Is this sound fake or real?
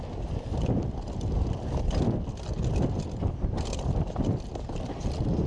real